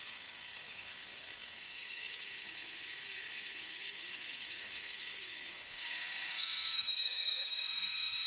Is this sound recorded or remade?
remade